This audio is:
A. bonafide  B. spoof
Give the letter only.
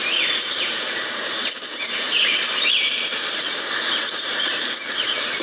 B